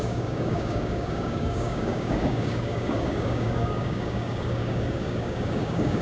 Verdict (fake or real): fake